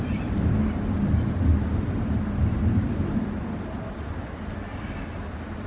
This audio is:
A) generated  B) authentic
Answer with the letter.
B